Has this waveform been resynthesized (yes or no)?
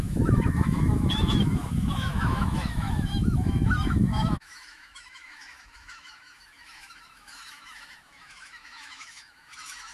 yes